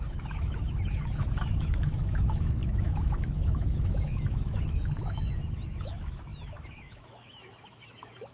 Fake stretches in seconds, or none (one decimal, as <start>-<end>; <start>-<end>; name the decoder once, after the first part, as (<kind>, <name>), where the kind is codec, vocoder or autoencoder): 0.0-8.3 (autoencoder, DAC-VAE)